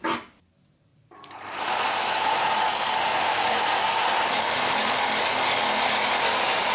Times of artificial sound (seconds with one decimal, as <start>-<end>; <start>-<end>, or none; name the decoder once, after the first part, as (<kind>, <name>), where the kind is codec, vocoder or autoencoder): 0.9-4.9 (vocoder, BigVGAN v2)